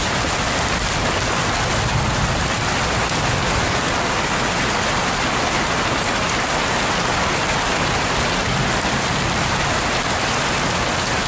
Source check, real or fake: real